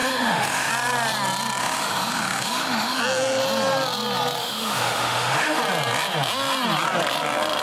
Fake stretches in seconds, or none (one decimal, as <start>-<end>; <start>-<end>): 0.0-0.7; 1.6-3.0; 4.4-5.6